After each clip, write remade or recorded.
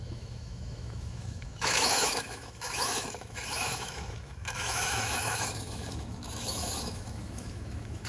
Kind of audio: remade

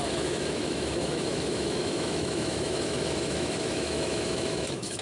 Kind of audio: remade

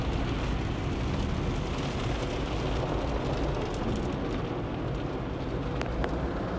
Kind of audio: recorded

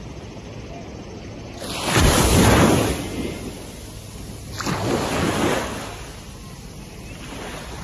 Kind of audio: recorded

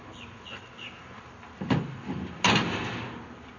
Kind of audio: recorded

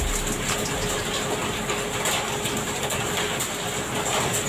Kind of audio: recorded